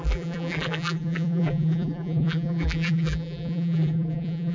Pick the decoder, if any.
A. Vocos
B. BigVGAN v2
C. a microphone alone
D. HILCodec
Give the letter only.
B